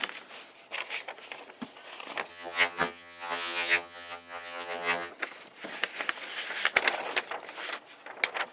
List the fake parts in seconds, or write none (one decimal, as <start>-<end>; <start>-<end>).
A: 2.3-5.1